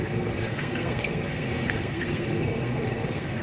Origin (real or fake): fake